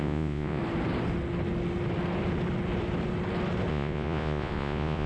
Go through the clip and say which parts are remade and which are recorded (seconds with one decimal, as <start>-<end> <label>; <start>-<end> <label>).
0.0-0.6 remade; 0.6-3.7 recorded; 3.7-5.1 remade